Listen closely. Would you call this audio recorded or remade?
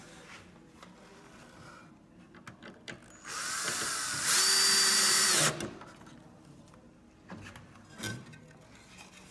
recorded